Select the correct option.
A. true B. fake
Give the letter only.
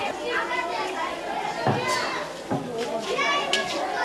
A